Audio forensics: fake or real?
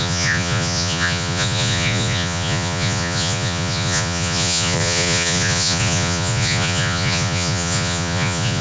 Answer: fake